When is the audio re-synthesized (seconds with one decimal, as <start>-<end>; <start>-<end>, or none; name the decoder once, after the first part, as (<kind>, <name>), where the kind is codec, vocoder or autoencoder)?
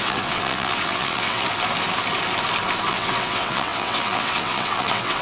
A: 0.0-1.5 (vocoder, WaveNeXt); 2.9-5.2